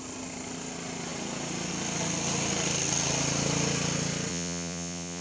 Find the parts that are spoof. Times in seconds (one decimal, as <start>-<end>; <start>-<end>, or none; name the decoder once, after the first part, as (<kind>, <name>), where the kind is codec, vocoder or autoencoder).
4.3-5.2 (vocoder, Vocos)